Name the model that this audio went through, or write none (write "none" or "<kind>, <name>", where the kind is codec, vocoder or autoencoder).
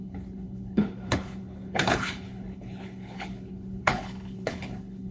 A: codec, HILCodec